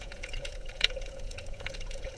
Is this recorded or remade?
remade